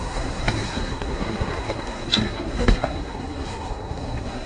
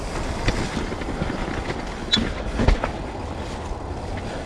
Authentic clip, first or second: second